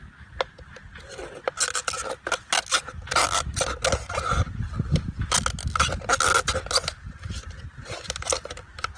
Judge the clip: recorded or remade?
recorded